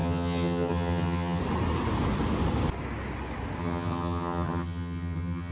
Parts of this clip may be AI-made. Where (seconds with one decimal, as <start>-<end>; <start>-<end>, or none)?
0.0-1.4; 3.6-5.5